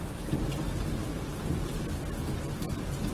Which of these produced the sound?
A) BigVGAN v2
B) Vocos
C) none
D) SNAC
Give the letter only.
C